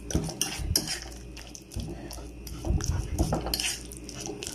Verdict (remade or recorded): recorded